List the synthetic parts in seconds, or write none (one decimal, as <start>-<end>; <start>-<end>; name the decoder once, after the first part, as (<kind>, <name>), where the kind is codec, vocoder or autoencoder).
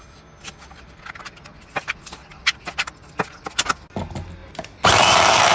none